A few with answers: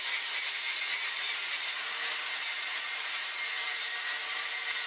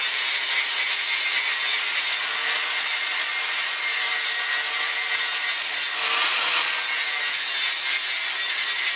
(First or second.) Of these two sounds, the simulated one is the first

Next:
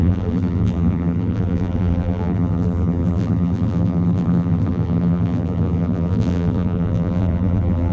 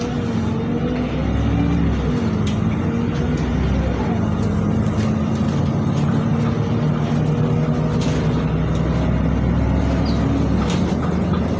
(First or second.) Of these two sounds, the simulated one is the first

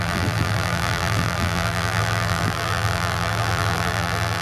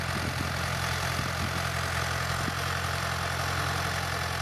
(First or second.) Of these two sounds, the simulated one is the first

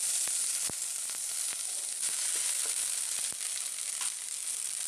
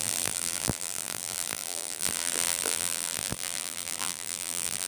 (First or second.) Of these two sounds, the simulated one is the second